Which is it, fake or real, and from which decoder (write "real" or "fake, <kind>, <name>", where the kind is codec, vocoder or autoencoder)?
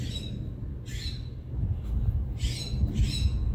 real